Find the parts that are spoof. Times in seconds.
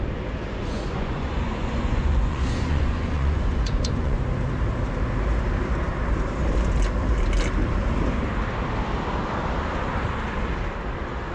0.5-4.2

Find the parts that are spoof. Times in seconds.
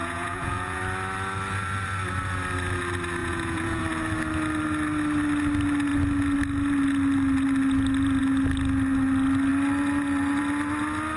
0.0-0.8; 3.2-3.8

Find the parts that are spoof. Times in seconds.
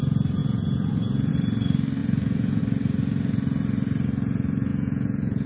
0.4-1.3; 2.0-2.6; 4.7-5.5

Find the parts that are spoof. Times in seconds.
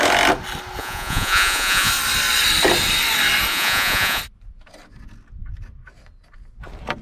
0.8-1.9; 3.5-4.2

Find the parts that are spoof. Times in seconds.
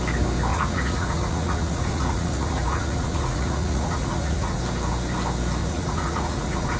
0.5-4.6; 5.6-6.8